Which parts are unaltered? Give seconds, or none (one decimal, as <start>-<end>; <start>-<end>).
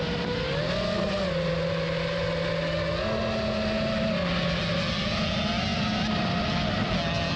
0.0-5.7; 6.3-7.4